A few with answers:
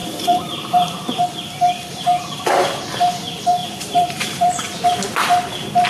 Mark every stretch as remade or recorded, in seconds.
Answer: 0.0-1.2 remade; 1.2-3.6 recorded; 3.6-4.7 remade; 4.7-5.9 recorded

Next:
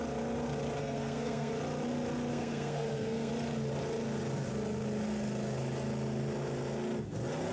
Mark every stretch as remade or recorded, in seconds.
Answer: 0.0-0.8 recorded; 0.8-1.5 remade; 1.5-2.3 recorded; 2.3-3.3 remade; 3.3-7.5 recorded

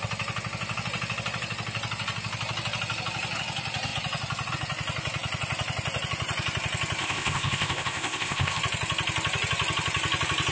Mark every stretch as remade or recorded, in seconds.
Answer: 0.0-7.0 recorded; 7.0-8.6 remade; 8.6-10.5 recorded

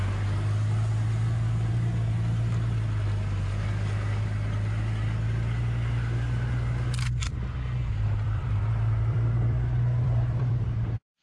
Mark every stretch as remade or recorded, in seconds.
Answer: 0.0-7.2 recorded; 7.2-11.2 remade

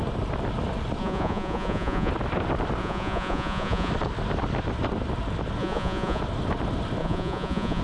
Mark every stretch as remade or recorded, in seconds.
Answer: 0.0-1.0 recorded; 1.0-2.1 remade; 2.1-2.8 recorded; 2.8-3.9 remade; 3.9-5.6 recorded; 5.6-6.2 remade; 6.2-7.0 recorded; 7.0-7.8 remade

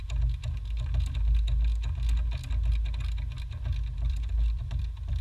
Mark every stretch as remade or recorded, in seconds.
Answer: 0.0-3.7 recorded; 3.7-5.2 remade